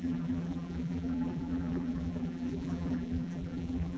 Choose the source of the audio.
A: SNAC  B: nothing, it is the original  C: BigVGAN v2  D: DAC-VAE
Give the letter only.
C